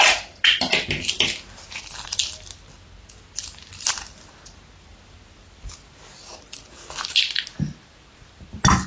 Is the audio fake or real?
real